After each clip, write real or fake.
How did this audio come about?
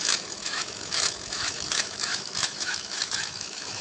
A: fake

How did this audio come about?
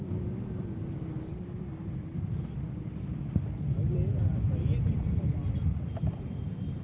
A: real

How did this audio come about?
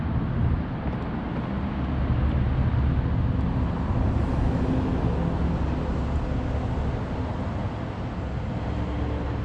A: real